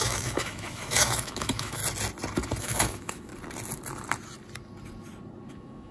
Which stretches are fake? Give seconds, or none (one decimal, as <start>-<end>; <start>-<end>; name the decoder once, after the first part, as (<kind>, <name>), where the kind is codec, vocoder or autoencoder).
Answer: 0.0-1.8 (autoencoder, DAC-VAE); 2.6-3.3; 5.5-5.9

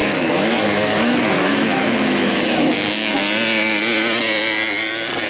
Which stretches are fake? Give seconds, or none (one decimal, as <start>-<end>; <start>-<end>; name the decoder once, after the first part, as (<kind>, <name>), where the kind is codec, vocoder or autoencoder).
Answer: 0.0-3.1 (autoencoder, DAC-VAE)

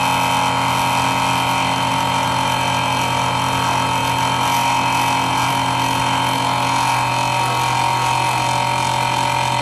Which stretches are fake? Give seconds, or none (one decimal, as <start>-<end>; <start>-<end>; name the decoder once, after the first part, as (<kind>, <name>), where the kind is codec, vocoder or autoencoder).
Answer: none

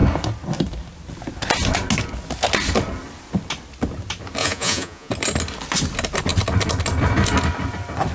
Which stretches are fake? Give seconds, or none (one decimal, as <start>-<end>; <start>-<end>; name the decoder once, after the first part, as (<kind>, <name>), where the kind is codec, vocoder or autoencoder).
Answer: 4.4-5.1 (vocoder, Vocos)

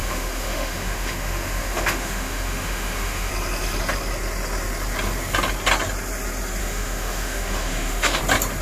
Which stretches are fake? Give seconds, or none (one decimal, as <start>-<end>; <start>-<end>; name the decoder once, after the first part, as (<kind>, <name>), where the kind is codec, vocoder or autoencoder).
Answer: 0.0-3.3 (autoencoder, DAC-VAE); 6.6-8.2

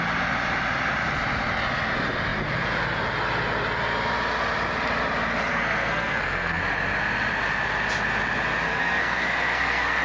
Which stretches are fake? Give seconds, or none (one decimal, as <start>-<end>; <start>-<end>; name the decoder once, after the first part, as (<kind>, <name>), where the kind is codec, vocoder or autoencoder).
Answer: 5.5-6.6 (codec, SNAC); 8.7-10.0

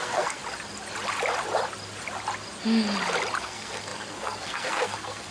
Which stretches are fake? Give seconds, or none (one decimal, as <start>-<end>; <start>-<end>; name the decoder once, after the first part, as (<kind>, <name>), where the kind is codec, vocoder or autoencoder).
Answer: 0.0-0.4 (codec, SNAC); 3.4-5.3

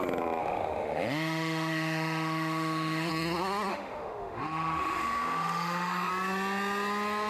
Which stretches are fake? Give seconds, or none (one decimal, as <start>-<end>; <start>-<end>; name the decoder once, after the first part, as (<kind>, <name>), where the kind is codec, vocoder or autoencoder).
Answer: 0.4-3.1 (autoencoder, DAC-VAE); 3.7-6.1